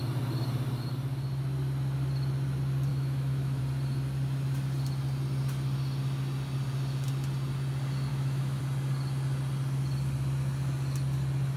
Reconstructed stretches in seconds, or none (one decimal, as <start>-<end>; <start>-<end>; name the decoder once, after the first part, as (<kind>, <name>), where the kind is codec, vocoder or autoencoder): 2.9-3.6 (autoencoder, DAC-VAE); 8.1-8.6